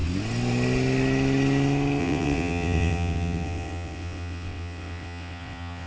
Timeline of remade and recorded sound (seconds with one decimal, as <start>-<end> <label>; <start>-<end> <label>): 0.0-2.0 recorded; 2.0-5.9 remade